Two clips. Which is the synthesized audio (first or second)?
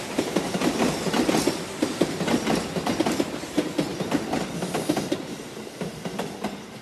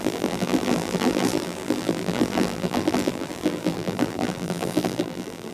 second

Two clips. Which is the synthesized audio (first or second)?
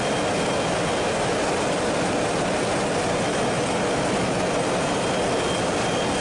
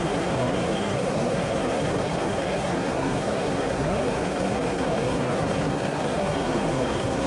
second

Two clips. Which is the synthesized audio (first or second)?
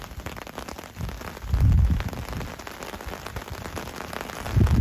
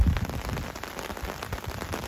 second